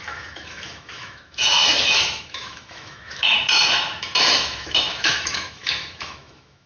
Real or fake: fake